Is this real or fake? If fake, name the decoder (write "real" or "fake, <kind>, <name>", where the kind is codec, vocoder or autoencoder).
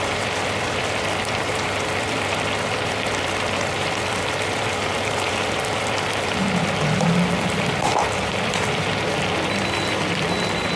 fake, vocoder, BigVGAN v2